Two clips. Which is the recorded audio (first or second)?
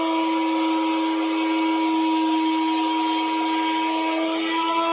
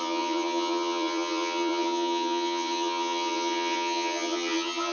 first